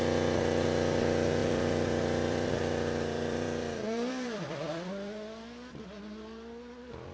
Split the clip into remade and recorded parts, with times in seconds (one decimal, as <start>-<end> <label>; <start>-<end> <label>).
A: 0.0-1.4 recorded; 1.4-4.9 remade; 4.9-7.1 recorded